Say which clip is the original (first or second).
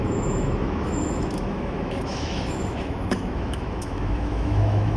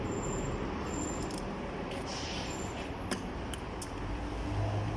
second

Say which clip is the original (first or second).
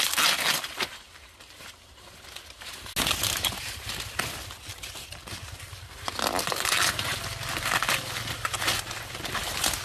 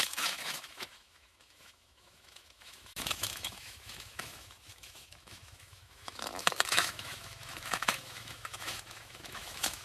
first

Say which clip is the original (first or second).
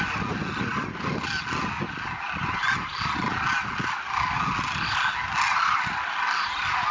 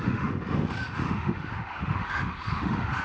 first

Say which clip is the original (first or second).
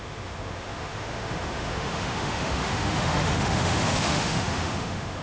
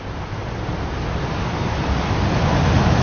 second